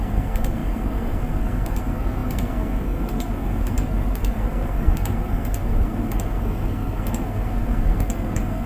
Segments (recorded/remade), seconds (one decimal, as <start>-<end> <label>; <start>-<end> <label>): 0.0-8.7 remade